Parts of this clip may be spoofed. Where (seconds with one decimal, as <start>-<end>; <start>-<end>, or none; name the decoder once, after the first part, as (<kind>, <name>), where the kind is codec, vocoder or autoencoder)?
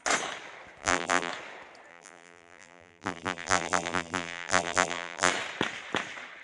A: 0.8-1.3 (vocoder, BigVGAN v2); 1.9-5.3